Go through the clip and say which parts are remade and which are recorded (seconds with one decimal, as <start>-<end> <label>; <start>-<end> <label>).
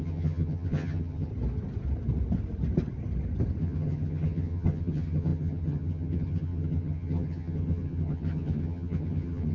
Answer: 0.0-1.3 remade; 1.3-3.6 recorded; 3.6-9.5 remade